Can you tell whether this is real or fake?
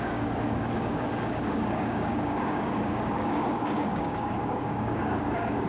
fake